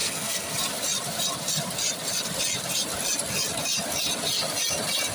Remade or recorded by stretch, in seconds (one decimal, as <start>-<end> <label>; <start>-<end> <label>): 0.0-0.5 remade; 0.5-5.1 recorded